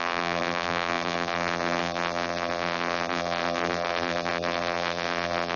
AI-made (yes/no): yes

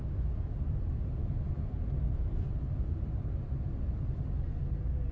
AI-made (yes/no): no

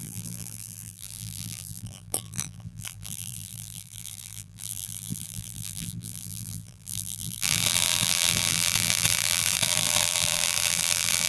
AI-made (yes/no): yes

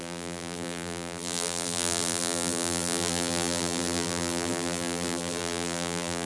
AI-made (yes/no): yes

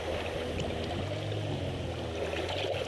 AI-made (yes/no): no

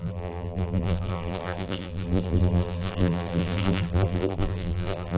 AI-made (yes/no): yes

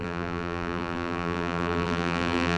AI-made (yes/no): yes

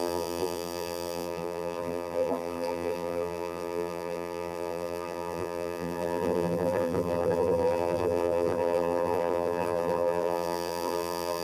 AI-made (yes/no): yes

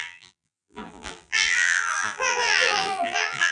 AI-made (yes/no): yes